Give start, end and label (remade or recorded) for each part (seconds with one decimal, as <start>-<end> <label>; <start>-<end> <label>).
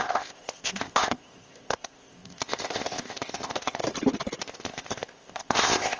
0.0-3.8 remade; 3.8-4.4 recorded; 4.4-6.0 remade